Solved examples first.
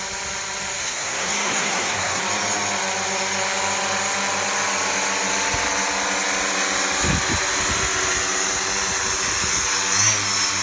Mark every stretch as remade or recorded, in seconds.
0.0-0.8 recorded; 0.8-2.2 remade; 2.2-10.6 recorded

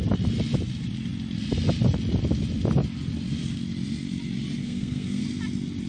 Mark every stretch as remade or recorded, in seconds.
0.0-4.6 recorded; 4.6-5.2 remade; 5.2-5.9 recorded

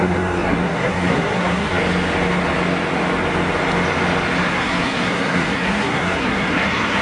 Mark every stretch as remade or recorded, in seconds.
0.0-1.8 remade; 1.8-4.4 recorded; 4.4-7.0 remade

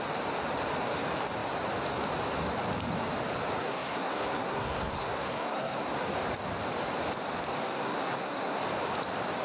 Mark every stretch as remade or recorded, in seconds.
0.0-3.6 recorded; 3.6-5.9 remade; 5.9-7.6 recorded; 7.6-8.6 remade; 8.6-9.4 recorded

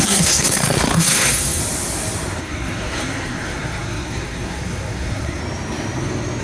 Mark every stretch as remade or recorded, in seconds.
0.0-1.6 remade; 1.6-2.4 recorded; 2.4-5.4 remade; 5.4-6.4 recorded

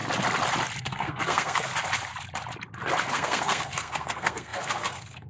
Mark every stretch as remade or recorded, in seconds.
0.0-0.8 recorded; 0.8-1.7 remade; 1.7-3.1 recorded; 3.1-5.3 remade